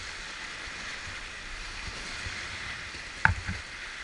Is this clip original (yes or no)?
yes